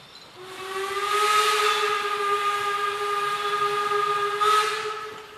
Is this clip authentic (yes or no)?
yes